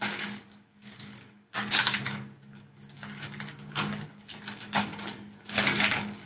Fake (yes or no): yes